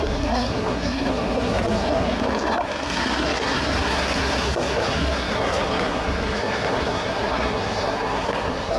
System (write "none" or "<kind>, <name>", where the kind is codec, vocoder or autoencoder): codec, SNAC